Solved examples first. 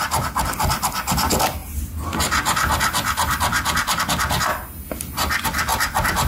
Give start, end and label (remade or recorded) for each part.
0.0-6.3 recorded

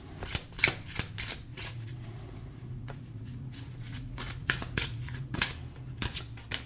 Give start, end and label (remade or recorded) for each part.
0.0-1.5 recorded; 1.5-5.5 remade; 5.5-6.7 recorded

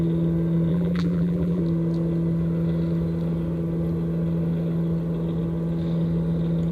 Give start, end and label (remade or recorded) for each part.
0.0-0.7 recorded; 0.7-1.6 remade; 1.6-6.7 recorded

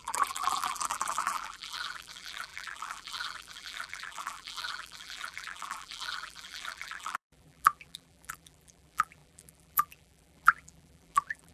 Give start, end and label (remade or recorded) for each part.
0.0-11.5 remade